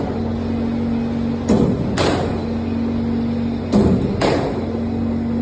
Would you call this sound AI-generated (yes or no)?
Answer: no